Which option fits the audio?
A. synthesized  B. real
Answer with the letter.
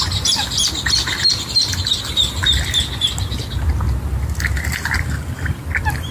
B